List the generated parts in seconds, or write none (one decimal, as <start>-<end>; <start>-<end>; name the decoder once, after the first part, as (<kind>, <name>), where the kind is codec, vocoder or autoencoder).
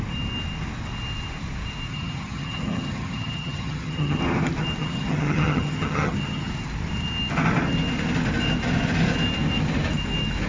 1.9-4.2 (vocoder, HiFi-GAN); 4.8-6.5